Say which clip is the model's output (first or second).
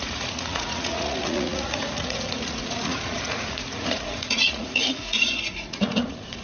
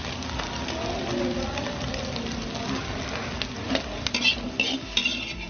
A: first